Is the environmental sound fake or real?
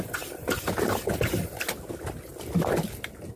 real